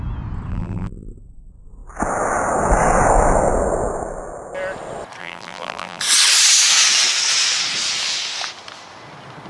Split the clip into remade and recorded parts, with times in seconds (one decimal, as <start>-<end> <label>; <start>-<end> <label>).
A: 0.0-0.5 recorded; 0.5-1.1 remade; 1.1-5.2 recorded; 5.2-6.0 remade; 6.0-9.5 recorded